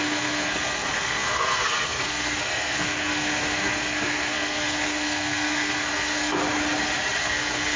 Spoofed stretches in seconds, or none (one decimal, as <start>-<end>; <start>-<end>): 0.0-6.4; 7.2-7.8